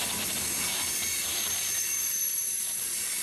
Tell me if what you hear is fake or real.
real